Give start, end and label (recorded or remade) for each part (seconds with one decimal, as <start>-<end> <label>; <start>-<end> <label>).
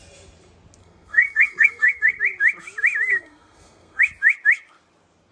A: 0.0-0.8 recorded; 0.8-2.2 remade; 2.2-3.1 recorded; 3.1-4.0 remade; 4.0-5.3 recorded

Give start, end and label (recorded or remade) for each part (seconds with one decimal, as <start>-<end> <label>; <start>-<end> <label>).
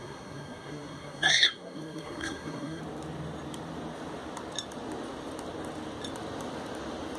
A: 0.0-2.8 remade; 2.8-7.2 recorded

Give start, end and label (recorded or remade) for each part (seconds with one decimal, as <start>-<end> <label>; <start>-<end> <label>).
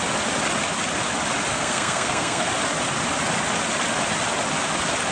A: 0.0-1.5 recorded; 1.5-2.5 remade; 2.5-5.1 recorded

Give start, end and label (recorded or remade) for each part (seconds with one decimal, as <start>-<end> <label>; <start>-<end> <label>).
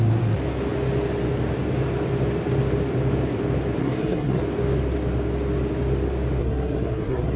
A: 0.0-3.8 recorded; 3.8-4.4 remade; 4.4-6.4 recorded; 6.4-7.4 remade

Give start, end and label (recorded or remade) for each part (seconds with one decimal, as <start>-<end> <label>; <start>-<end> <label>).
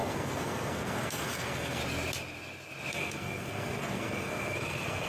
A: 0.0-1.8 remade; 1.8-2.9 recorded; 2.9-5.1 remade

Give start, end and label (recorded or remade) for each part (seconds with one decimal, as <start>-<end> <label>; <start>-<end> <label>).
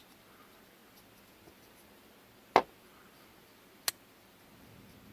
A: 0.0-5.1 recorded